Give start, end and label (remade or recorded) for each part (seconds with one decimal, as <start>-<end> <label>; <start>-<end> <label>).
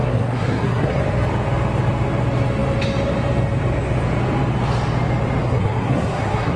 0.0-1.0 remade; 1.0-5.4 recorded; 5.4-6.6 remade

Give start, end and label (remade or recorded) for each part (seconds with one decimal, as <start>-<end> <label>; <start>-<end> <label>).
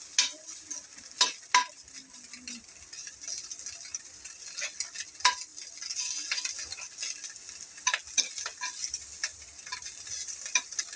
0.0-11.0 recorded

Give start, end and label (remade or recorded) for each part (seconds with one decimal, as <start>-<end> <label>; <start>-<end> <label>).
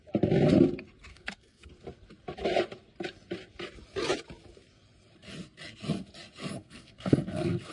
0.0-1.1 recorded; 1.1-1.7 remade; 1.7-6.6 recorded; 6.6-7.7 remade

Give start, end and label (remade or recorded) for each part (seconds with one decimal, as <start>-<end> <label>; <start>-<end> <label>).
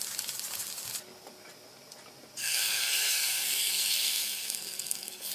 0.0-2.4 recorded; 2.4-5.3 remade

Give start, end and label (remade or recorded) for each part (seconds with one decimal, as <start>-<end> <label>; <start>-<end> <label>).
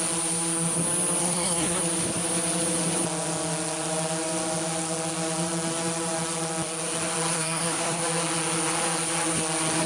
0.0-1.2 recorded; 1.2-1.8 remade; 1.8-7.3 recorded; 7.3-8.0 remade; 8.0-9.9 recorded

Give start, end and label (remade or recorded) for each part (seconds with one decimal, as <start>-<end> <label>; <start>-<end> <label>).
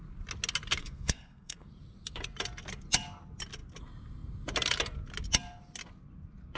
0.0-0.8 recorded; 0.8-1.7 remade; 1.7-6.6 recorded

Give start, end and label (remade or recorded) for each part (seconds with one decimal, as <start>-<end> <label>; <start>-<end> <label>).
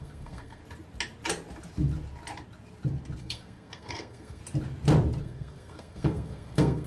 0.0-0.6 remade; 0.6-3.2 recorded; 3.2-4.4 remade; 4.4-5.2 recorded; 5.2-6.9 remade